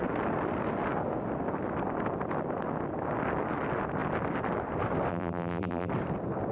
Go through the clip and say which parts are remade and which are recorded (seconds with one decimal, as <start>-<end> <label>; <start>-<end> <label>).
0.0-5.1 recorded; 5.1-5.9 remade; 5.9-6.5 recorded